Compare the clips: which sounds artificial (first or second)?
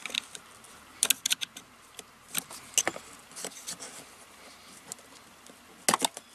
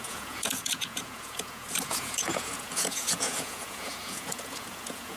second